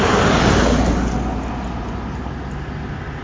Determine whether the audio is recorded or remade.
recorded